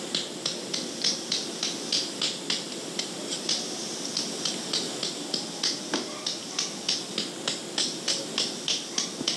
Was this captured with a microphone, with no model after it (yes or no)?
yes